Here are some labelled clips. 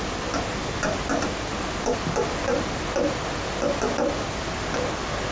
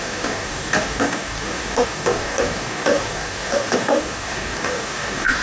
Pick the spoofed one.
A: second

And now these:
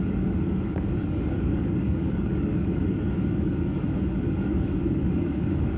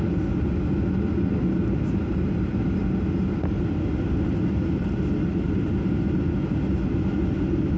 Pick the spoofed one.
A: first